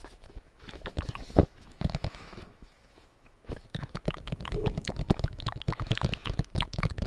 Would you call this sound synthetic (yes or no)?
yes